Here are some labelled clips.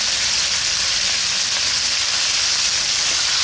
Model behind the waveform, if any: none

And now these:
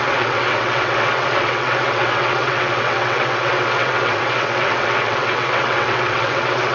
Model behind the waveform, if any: vocoder, WaveNeXt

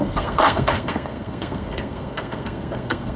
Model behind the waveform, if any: codec, SNAC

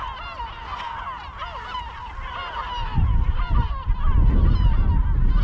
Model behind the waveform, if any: none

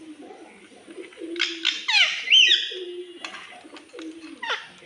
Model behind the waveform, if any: none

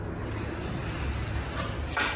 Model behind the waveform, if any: none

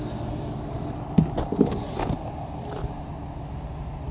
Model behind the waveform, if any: none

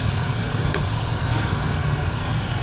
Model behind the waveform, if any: codec, SNAC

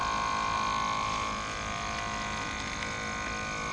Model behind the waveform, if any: none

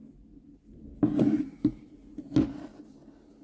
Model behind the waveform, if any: none